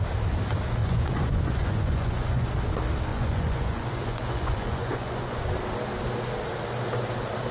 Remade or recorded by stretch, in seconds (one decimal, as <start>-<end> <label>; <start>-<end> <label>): 0.0-0.8 recorded; 0.8-2.5 remade; 2.5-3.1 recorded; 3.1-5.4 remade; 5.4-7.5 recorded